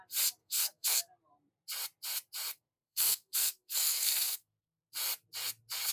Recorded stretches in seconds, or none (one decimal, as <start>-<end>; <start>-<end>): 0.0-0.4; 1.0-2.5; 4.8-5.9